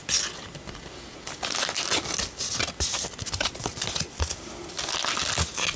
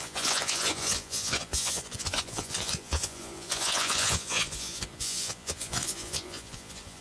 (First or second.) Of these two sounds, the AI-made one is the second